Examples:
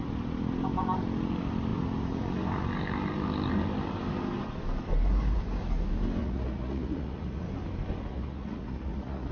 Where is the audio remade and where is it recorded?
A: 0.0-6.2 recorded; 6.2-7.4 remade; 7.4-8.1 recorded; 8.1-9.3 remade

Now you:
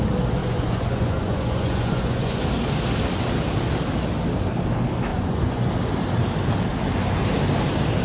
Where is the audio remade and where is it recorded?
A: 0.0-0.4 recorded; 0.4-2.4 remade; 2.4-5.1 recorded; 5.1-5.7 remade; 5.7-8.0 recorded

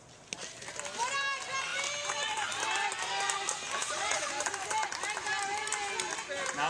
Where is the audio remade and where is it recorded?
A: 0.0-3.8 recorded; 3.8-4.3 remade; 4.3-6.7 recorded

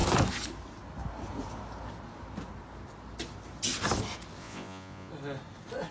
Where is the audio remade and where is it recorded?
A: 0.0-4.4 recorded; 4.4-5.1 remade; 5.1-5.9 recorded

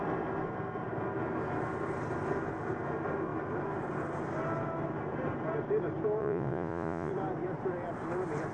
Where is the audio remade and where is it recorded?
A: 0.0-6.2 recorded; 6.2-7.1 remade; 7.1-8.5 recorded

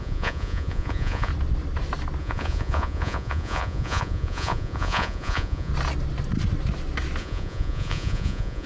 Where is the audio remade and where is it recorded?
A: 0.0-1.3 remade; 1.3-2.2 recorded; 2.2-5.7 remade; 5.7-7.2 recorded; 7.2-8.7 remade

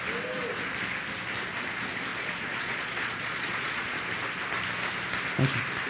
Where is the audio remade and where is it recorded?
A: 0.0-2.1 recorded; 2.1-4.0 remade; 4.0-5.9 recorded

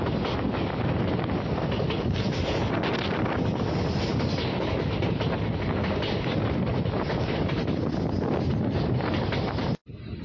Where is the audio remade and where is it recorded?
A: 0.0-10.2 recorded